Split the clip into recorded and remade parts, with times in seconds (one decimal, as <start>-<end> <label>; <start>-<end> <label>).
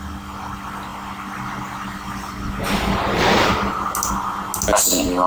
0.0-5.3 recorded